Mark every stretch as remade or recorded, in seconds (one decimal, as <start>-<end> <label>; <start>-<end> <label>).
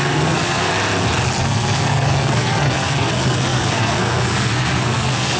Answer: 0.0-0.7 remade; 0.7-1.4 recorded; 1.4-5.4 remade